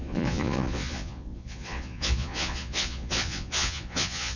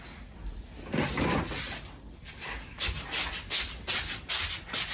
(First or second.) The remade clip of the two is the first